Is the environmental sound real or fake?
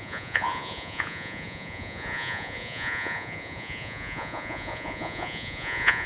fake